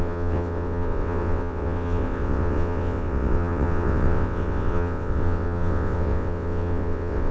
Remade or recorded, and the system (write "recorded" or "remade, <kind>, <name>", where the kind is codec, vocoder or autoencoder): remade, vocoder, WaveNeXt